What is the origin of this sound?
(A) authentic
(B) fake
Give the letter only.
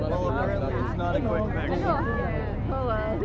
A